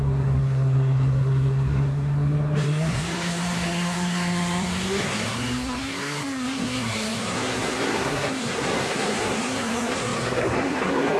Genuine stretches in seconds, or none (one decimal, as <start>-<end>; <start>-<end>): none